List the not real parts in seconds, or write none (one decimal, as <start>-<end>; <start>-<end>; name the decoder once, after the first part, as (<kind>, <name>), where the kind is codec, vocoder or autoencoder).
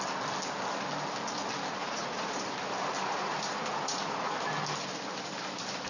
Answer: 1.8-2.4 (vocoder, Vocos); 3.2-4.4